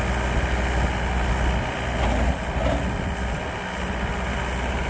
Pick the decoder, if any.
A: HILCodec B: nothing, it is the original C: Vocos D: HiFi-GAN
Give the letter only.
B